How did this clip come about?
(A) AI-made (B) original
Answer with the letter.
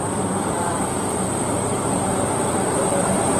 A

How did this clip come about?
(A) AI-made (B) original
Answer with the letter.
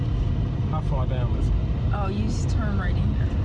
B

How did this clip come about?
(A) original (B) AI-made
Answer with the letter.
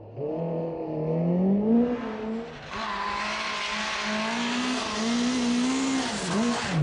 A